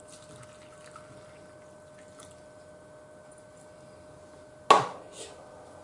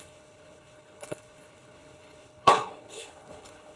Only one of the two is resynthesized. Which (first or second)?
second